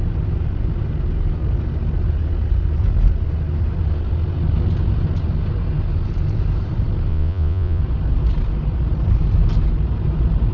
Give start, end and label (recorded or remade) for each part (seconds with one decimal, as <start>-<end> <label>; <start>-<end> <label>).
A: 0.0-7.1 recorded; 7.1-7.8 remade; 7.8-10.5 recorded